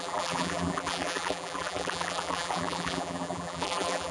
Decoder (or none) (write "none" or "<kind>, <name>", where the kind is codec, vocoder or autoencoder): vocoder, BigVGAN v2